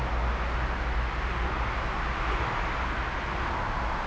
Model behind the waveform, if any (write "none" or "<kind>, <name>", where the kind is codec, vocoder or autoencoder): none